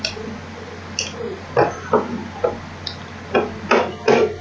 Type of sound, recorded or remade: recorded